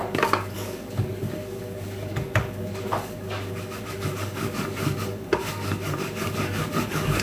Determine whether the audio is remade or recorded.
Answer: remade